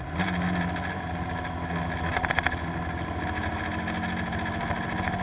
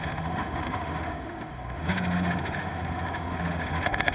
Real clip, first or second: first